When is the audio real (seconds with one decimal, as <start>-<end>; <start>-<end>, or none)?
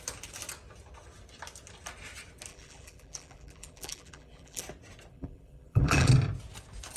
0.0-2.5; 4.6-5.1; 6.1-7.0